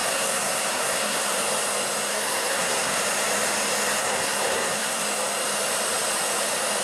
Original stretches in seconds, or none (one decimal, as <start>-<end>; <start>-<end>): 1.4-2.1; 3.0-4.0; 5.0-6.8